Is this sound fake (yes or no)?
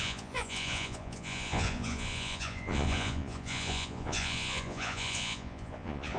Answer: yes